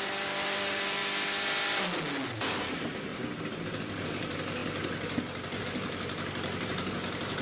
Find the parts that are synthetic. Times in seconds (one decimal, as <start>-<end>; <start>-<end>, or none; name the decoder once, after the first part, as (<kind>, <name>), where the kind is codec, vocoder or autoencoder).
0.0-1.0 (vocoder, BigVGAN v2); 2.3-3.1; 3.6-4.6; 5.6-7.4